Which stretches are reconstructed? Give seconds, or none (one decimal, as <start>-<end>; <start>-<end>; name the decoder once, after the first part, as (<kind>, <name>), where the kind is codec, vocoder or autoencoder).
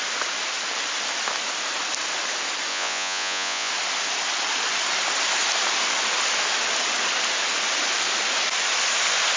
2.7-3.7 (vocoder, Vocos)